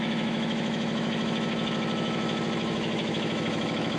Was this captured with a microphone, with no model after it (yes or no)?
no